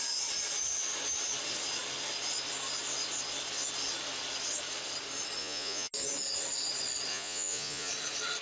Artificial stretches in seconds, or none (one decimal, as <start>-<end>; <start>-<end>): 5.4-5.9; 7.1-7.9